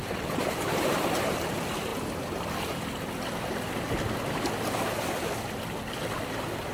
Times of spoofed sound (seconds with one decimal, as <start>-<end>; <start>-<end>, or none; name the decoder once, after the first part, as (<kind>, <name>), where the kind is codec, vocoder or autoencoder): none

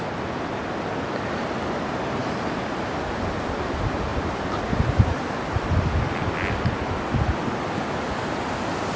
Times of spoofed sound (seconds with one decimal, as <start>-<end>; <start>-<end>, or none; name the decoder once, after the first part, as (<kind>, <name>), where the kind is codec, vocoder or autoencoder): 2.2-3.1 (vocoder, BigVGAN v2)

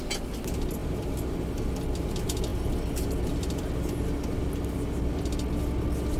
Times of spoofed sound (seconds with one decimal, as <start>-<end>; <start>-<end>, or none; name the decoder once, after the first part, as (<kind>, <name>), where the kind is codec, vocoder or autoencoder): none

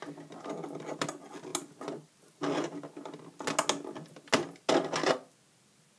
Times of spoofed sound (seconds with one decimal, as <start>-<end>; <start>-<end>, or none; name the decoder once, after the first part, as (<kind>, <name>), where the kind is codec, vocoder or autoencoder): none

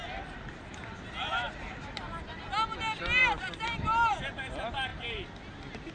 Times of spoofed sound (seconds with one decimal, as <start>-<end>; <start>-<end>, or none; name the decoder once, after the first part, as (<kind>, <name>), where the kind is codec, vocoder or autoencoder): 0.7-2.4 (vocoder, BigVGAN v2); 3.2-4.2

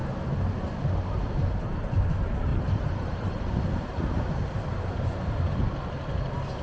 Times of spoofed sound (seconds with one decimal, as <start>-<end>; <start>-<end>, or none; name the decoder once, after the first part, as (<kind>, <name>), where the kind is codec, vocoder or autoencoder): 2.5-5.5 (vocoder, BigVGAN v2)

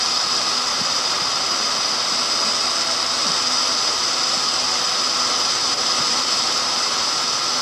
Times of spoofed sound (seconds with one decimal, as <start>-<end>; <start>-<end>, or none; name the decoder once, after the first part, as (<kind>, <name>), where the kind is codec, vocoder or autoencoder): 0.7-1.9 (vocoder, BigVGAN v2); 5.7-7.1